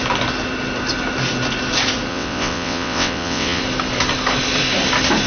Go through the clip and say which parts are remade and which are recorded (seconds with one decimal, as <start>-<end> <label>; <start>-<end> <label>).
0.0-2.1 recorded; 2.1-3.6 remade; 3.6-5.3 recorded